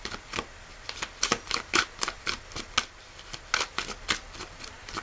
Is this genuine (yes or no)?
yes